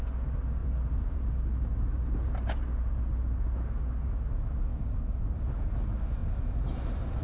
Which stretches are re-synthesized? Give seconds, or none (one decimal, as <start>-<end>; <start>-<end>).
0.6-1.3; 6.2-7.2